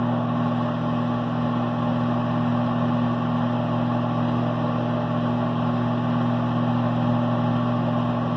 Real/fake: real